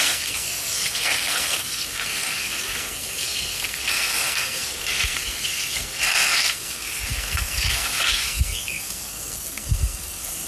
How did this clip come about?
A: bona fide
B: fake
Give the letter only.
B